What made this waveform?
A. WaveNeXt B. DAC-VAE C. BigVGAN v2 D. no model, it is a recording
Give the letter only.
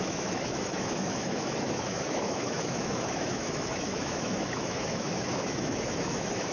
B